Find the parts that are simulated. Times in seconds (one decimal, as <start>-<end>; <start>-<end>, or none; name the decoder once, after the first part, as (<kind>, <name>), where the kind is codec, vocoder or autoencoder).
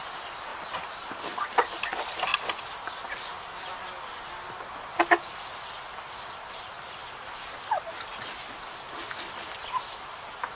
none